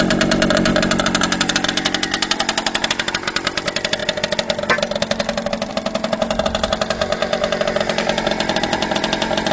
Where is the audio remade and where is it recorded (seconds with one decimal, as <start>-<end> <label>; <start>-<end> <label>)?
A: 0.0-9.5 recorded